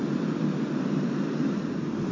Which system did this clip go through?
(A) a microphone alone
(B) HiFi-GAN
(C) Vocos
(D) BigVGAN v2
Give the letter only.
A